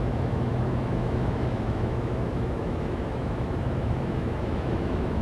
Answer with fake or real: fake